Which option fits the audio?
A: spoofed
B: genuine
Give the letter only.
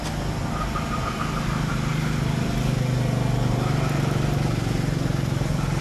B